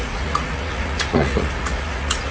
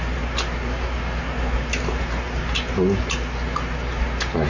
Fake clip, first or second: first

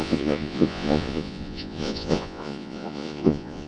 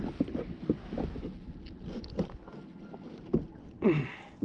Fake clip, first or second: first